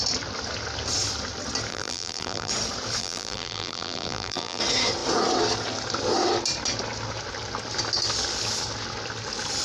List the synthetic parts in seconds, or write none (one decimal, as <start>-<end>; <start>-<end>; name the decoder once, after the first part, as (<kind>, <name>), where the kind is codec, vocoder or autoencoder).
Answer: 1.7-2.5 (vocoder, BigVGAN v2); 3.0-4.6

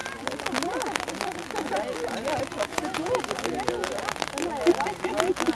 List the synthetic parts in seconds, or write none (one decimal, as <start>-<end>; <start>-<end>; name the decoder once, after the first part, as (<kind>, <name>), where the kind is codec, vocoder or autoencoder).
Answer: 2.7-3.2 (vocoder, Vocos)